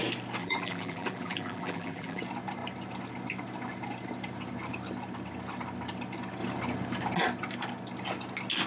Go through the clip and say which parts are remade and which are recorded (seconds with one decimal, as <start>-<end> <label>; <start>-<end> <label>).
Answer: 0.0-0.4 recorded; 0.4-2.2 remade; 2.2-8.7 recorded